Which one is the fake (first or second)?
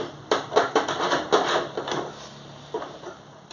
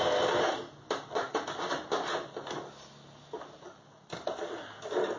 first